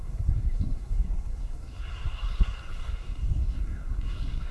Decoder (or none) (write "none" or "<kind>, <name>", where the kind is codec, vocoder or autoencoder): codec, SNAC